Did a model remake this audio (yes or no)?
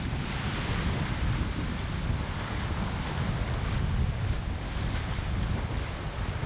no